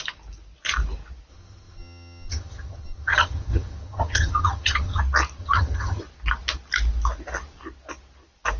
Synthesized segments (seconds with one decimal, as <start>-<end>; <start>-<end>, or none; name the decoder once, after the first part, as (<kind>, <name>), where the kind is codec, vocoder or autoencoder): 1.3-5.0 (vocoder, HiFi-GAN); 5.4-6.0